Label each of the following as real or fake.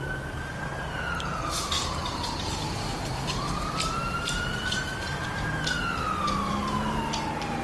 real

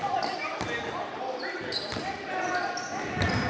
real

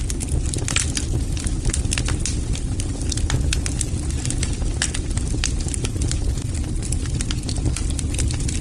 real